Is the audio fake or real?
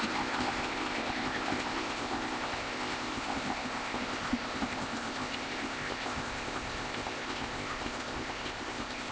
fake